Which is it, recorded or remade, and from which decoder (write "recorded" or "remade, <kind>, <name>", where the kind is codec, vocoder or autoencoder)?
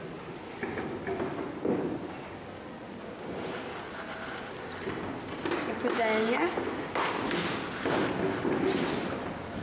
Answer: recorded